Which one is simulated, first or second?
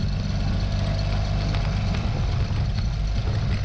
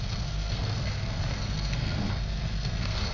second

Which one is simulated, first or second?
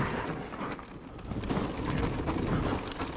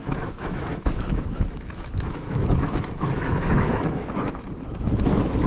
second